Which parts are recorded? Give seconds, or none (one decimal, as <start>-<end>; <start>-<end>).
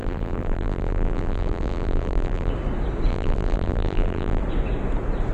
2.5-3.1; 4.4-5.3